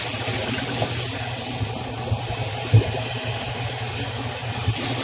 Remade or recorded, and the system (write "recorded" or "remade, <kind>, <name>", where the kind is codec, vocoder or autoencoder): recorded